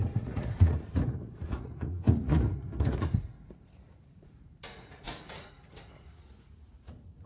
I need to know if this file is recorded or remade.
remade